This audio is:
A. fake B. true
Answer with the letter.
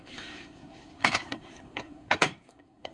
A